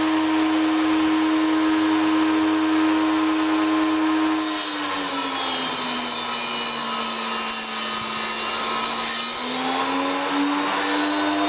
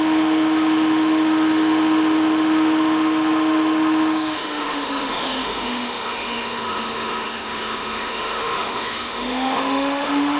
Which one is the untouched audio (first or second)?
first